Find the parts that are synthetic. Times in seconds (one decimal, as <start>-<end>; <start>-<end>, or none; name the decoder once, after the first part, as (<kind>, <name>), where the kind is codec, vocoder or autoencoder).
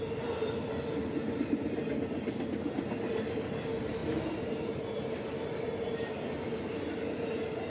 4.0-4.7 (vocoder, BigVGAN v2)